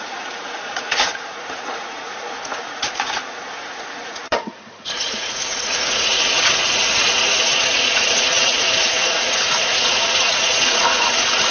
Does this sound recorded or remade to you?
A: remade